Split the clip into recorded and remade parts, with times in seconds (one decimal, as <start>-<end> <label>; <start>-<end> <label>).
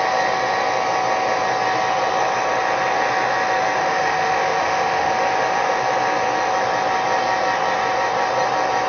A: 0.0-3.8 recorded; 3.8-5.1 remade; 5.1-8.9 recorded